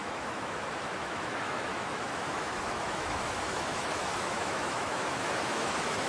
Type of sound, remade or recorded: remade